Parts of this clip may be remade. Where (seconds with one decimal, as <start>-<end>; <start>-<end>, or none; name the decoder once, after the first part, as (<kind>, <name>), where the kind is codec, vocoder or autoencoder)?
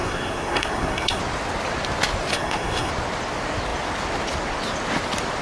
0.0-1.2 (codec, SNAC); 2.3-2.9